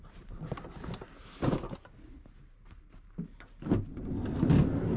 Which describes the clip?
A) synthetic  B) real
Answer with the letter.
B